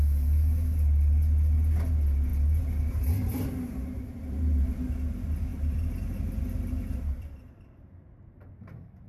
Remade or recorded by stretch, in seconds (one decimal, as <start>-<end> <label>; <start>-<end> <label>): 0.0-5.5 recorded; 5.5-8.1 remade; 8.1-9.1 recorded